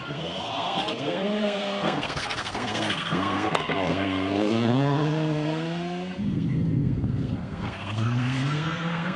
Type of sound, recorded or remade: remade